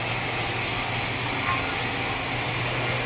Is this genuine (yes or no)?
yes